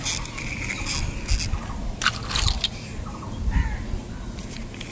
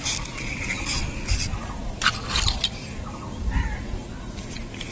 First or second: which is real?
first